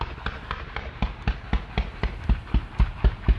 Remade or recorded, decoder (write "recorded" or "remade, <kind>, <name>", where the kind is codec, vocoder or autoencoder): recorded